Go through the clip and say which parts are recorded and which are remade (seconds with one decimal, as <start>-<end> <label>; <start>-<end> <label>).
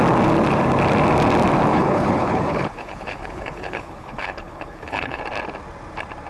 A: 0.0-1.7 recorded; 1.7-5.2 remade; 5.2-6.3 recorded